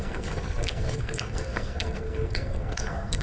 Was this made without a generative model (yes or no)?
no